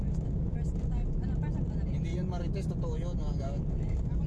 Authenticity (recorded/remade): recorded